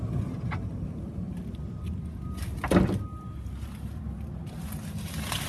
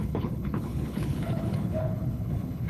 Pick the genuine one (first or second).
first